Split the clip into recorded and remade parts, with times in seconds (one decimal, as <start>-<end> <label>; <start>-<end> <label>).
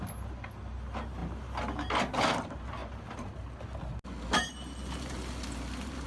0.0-6.1 recorded